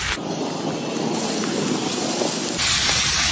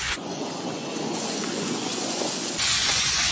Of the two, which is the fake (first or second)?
second